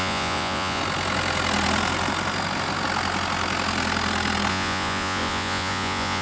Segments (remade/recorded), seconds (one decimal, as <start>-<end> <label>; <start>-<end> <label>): 0.0-0.8 remade; 0.8-4.5 recorded; 4.5-6.2 remade